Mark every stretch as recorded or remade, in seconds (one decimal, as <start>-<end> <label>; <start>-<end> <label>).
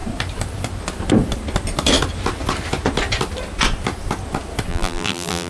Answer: 0.0-4.7 recorded; 4.7-5.5 remade